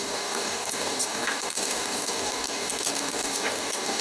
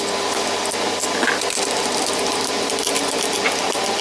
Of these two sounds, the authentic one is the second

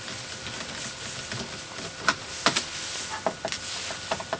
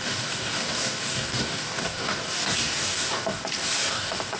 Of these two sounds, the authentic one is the first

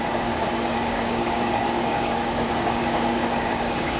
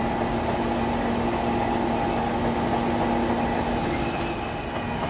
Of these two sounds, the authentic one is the second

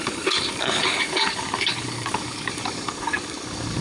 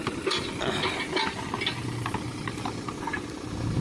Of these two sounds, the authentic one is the second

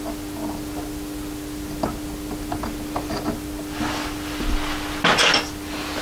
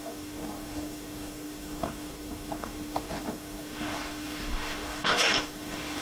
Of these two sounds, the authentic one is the first